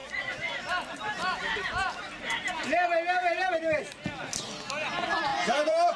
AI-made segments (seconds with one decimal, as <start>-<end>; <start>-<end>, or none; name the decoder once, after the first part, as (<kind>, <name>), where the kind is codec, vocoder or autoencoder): 0.0-2.2 (vocoder, BigVGAN v2); 3.2-3.8; 5.3-6.0